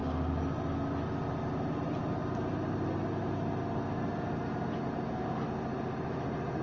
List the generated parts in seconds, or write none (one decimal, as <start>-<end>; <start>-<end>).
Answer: none